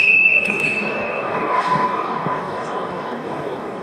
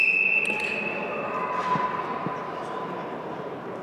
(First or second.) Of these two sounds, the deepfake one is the first